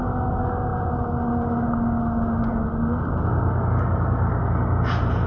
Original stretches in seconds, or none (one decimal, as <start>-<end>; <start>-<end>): 0.0-5.3